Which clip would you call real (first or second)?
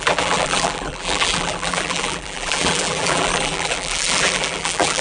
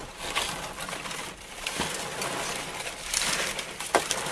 second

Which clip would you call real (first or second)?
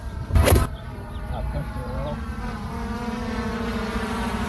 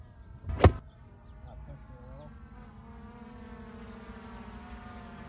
second